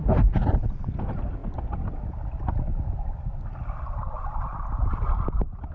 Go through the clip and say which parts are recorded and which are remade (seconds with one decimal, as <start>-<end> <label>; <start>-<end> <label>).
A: 0.0-5.7 recorded